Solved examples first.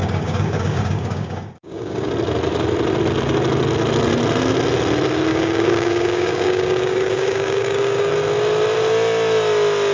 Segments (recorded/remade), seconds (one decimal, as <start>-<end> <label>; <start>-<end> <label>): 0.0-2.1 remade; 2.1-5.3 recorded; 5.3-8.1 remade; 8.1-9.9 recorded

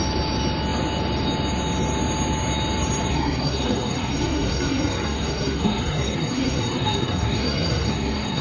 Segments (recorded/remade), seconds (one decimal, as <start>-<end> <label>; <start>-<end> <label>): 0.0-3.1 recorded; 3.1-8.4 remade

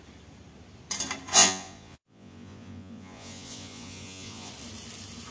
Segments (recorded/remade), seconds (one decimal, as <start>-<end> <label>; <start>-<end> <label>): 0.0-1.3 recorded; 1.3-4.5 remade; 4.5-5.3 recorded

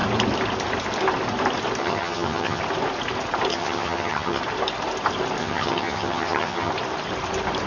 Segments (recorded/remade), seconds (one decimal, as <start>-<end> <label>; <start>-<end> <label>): 0.0-1.8 recorded; 1.8-2.6 remade; 2.6-3.5 recorded; 3.5-4.4 remade; 4.4-5.4 recorded; 5.4-6.7 remade; 6.7-7.7 recorded